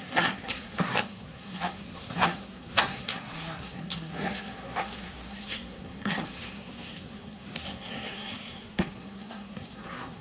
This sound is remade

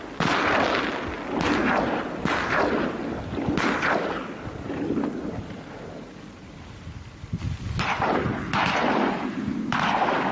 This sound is recorded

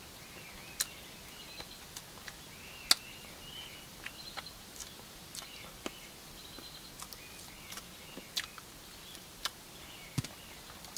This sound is recorded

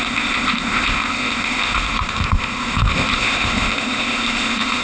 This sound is remade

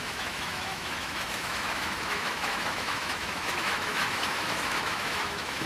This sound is remade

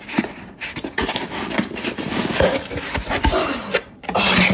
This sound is recorded